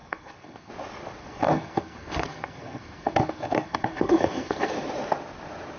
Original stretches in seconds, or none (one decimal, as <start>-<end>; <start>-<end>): 0.7-1.2; 4.7-5.8